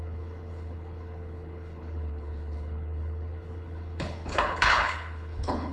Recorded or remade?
remade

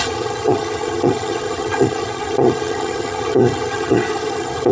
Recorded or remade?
remade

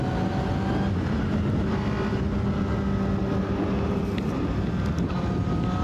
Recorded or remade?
recorded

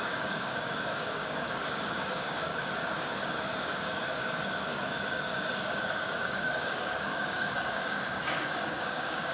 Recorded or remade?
remade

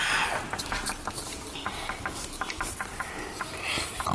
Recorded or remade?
recorded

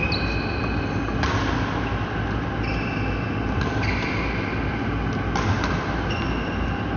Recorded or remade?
recorded